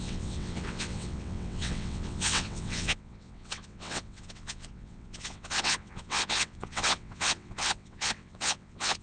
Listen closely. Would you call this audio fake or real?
fake